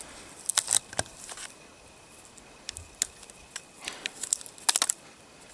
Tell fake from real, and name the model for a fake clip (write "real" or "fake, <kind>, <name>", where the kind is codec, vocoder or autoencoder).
real